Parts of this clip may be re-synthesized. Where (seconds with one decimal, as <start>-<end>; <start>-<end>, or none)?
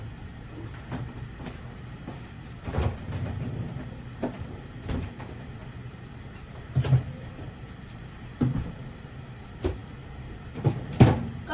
0.0-11.5